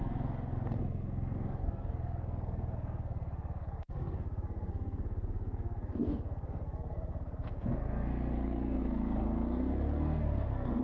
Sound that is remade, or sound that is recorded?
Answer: remade